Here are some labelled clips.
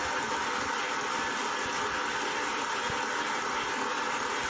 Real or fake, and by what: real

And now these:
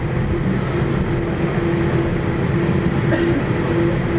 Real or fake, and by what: real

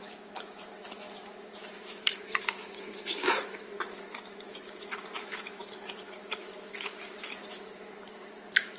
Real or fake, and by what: fake, autoencoder, DAC-VAE